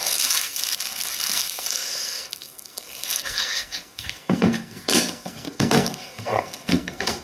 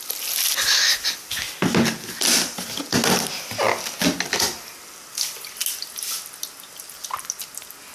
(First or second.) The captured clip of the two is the second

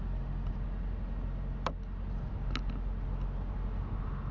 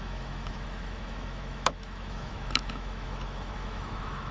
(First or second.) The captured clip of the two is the first